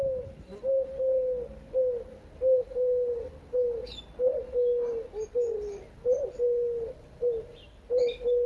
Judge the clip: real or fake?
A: real